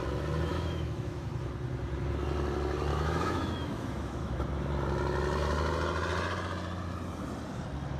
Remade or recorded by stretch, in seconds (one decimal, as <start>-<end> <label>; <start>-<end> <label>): 0.0-0.5 recorded; 0.5-1.3 remade; 1.3-2.9 recorded; 2.9-4.4 remade; 4.4-8.0 recorded